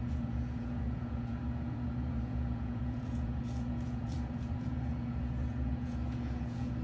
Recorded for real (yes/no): no